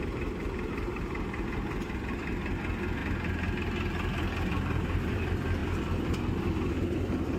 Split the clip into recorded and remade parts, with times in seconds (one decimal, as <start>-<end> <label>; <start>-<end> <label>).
0.0-3.0 remade; 3.0-4.5 recorded; 4.5-7.4 remade